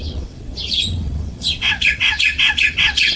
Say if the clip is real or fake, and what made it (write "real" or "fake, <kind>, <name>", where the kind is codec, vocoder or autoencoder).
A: fake, vocoder, WaveNeXt